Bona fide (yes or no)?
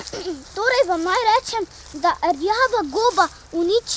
yes